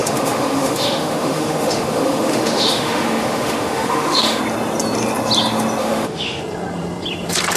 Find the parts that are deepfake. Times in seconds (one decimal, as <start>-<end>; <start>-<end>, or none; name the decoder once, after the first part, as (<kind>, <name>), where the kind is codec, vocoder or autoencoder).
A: 0.0-4.4 (autoencoder, DAC-VAE); 5.8-6.4

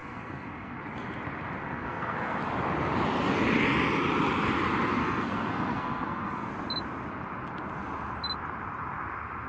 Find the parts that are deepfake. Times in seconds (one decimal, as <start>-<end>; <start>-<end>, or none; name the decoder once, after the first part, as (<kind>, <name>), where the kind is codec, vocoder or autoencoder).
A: 0.0-0.8 (codec, SNAC); 1.6-2.4; 5.0-6.5

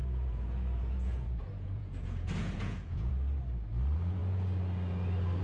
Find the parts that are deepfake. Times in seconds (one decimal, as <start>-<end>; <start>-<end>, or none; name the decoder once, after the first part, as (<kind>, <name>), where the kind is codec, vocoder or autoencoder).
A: 0.0-3.1 (vocoder, Vocos)

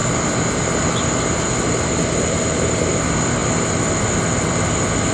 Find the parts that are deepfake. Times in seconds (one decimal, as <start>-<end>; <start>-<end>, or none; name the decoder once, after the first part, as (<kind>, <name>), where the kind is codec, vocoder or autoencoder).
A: none